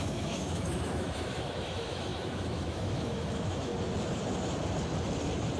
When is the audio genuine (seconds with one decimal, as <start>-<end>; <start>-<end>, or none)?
3.7-5.6